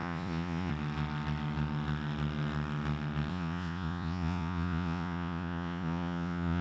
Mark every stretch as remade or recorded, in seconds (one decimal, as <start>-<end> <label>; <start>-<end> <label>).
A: 0.0-0.7 remade; 0.7-3.3 recorded; 3.3-6.6 remade